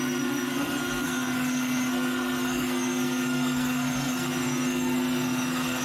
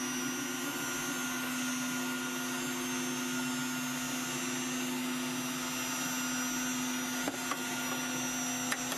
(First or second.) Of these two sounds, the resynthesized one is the first